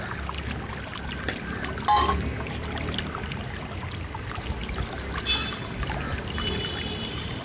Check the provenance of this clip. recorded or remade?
recorded